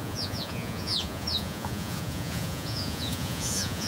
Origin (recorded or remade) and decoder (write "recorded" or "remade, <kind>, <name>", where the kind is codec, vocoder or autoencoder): remade, vocoder, Vocos